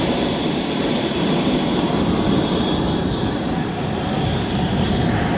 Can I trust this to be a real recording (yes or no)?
no